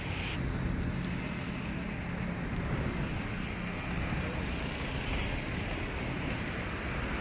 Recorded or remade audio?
recorded